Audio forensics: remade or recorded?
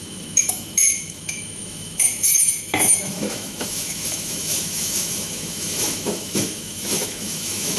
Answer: remade